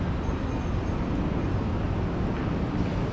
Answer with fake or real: real